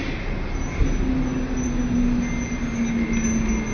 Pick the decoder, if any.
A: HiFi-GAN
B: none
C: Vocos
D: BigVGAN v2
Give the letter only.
B